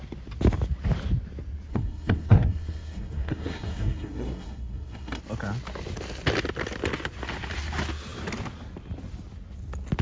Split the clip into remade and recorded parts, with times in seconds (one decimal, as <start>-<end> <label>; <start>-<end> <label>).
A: 0.0-1.7 recorded; 1.7-5.2 remade; 5.2-10.0 recorded